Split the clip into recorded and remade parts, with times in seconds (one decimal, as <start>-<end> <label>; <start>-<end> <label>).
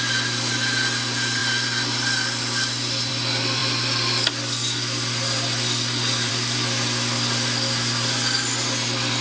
0.0-9.2 recorded